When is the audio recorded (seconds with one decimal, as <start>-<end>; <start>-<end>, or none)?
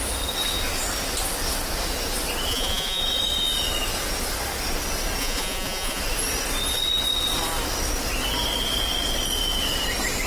0.0-2.5; 3.0-5.2; 6.0-10.3